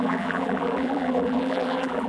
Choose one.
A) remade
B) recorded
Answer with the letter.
A